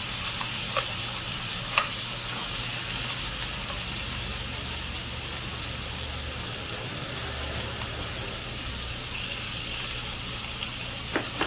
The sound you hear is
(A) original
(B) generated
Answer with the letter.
A